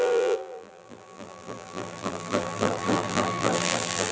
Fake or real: fake